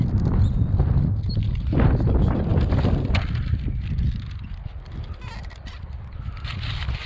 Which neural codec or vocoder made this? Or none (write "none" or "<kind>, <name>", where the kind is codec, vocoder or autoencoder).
none